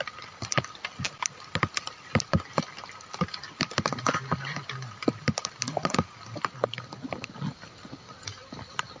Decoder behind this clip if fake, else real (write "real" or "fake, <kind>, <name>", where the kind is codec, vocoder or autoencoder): real